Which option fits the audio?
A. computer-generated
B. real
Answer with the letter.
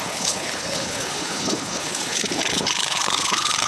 A